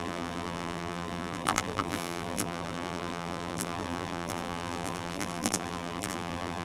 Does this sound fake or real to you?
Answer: fake